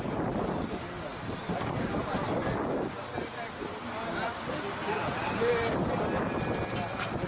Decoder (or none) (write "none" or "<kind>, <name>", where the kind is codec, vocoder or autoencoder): none